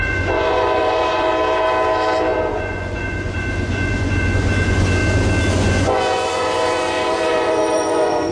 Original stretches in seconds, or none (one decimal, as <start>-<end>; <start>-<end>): 1.3-2.5; 5.0-5.5